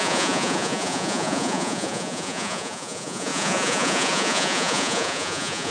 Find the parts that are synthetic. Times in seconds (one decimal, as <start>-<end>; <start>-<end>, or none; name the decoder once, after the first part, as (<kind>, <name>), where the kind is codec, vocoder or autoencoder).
0.0-5.7 (vocoder, Vocos)